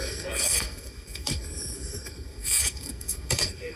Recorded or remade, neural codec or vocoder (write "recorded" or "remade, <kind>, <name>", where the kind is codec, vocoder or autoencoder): remade, codec, SNAC